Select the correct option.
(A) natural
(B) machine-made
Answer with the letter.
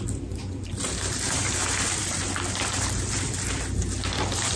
B